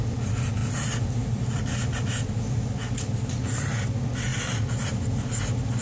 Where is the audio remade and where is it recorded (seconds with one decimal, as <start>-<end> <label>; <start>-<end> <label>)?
0.0-5.8 recorded